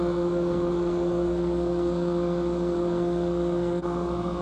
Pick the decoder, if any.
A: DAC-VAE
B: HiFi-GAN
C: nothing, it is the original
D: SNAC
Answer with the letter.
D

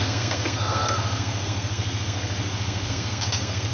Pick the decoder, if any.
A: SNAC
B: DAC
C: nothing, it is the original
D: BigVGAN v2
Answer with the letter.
A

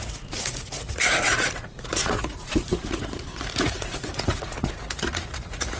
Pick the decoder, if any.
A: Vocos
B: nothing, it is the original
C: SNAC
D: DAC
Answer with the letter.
A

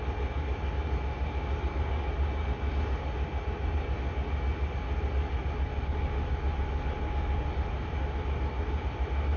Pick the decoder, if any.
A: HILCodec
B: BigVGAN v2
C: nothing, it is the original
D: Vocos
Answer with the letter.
C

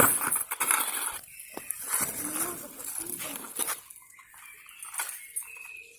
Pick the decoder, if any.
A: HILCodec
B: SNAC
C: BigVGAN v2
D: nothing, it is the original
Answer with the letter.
D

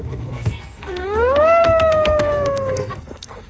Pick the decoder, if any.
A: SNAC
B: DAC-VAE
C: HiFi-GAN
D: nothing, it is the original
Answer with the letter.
A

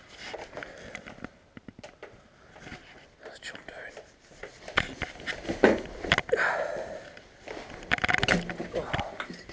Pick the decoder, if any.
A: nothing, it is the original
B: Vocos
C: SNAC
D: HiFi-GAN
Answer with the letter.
A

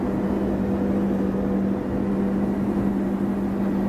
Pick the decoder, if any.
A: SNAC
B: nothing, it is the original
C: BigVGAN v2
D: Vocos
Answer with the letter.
B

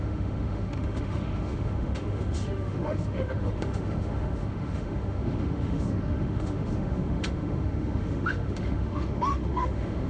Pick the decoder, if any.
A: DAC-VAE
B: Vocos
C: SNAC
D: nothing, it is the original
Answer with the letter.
A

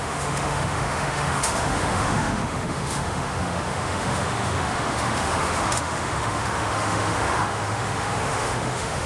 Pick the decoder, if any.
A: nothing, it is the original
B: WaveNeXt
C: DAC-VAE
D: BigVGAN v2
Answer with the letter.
C